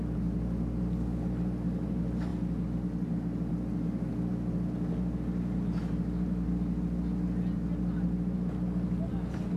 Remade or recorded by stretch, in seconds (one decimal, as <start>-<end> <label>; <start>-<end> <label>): 0.0-9.6 recorded